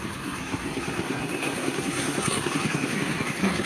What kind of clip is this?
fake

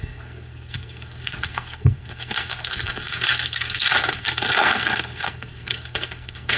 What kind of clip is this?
fake